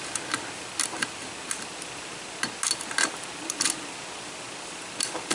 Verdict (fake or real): real